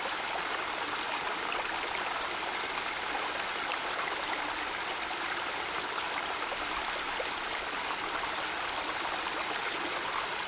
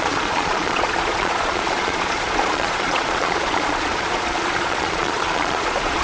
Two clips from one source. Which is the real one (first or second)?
first